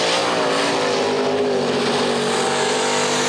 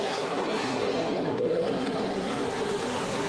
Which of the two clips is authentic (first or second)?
first